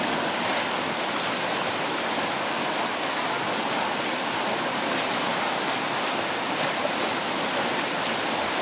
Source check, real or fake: real